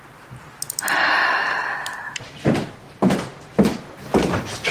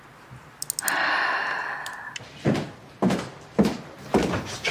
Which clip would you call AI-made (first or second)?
first